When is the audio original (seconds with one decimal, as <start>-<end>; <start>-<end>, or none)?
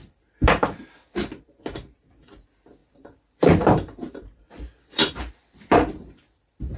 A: 2.3-2.8